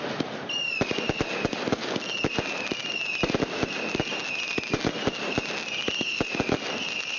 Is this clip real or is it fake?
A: real